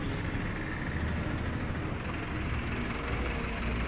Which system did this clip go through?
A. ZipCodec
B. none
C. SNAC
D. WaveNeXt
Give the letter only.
B